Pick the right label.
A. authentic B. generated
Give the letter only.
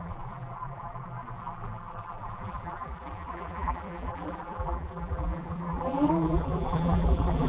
B